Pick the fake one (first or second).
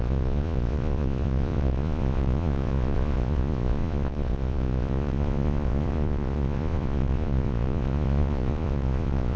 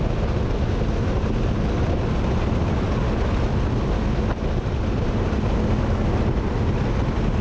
first